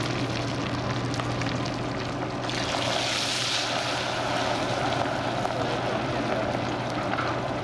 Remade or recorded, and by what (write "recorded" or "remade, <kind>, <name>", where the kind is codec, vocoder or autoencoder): recorded